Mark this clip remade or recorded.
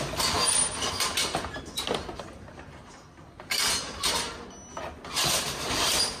recorded